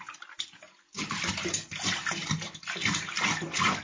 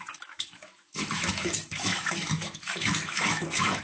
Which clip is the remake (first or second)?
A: second